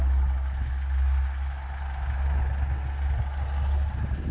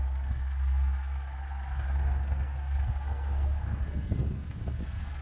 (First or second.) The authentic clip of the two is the first